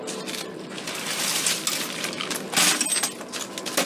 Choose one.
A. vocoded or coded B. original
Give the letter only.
B